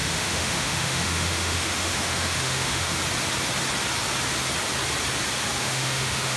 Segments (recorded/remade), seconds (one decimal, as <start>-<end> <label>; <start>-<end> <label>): 0.0-3.0 remade; 3.0-5.6 recorded; 5.6-6.4 remade